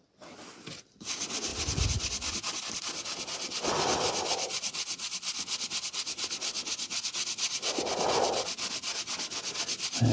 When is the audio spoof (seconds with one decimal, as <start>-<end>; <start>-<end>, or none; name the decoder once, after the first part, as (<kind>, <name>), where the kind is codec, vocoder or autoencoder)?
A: none